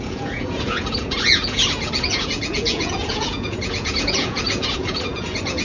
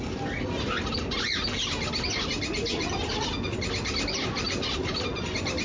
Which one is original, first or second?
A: second